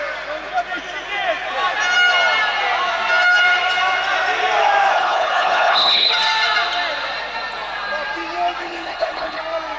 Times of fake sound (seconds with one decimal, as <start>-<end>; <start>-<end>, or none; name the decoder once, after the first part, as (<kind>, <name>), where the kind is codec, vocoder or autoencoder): 4.9-6.1 (codec, HILCodec); 8.6-9.4